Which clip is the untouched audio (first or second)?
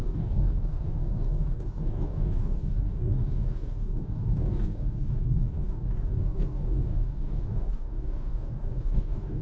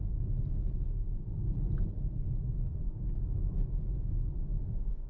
second